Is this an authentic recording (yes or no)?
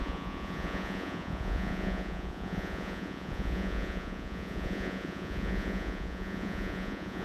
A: no